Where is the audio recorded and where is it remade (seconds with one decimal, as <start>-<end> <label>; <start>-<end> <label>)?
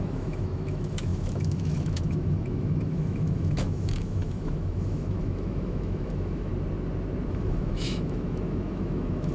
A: 0.0-6.5 remade; 6.5-7.3 recorded; 7.3-9.3 remade